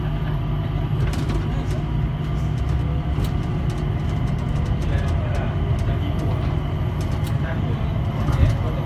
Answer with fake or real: real